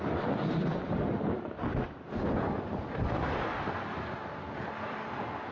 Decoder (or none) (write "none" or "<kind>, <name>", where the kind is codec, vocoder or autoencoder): none